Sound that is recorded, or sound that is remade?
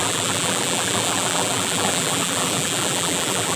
remade